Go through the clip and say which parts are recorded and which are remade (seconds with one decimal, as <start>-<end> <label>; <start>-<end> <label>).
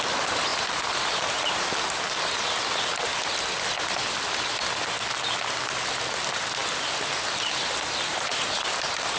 0.0-0.5 recorded; 0.5-1.6 remade; 1.6-8.1 recorded; 8.1-9.2 remade